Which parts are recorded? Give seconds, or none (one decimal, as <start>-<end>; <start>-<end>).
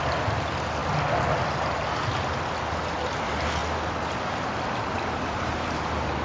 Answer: 0.0-6.2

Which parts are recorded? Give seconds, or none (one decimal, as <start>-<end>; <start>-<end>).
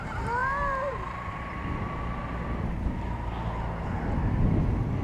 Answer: 0.0-5.0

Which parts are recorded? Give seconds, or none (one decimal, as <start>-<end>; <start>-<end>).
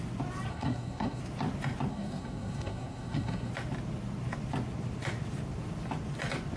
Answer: 0.0-0.5; 1.2-1.9; 3.5-6.6